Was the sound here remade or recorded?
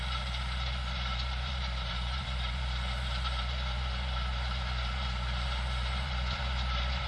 remade